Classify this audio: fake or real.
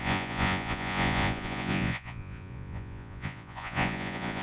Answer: fake